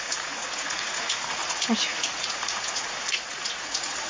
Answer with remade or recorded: remade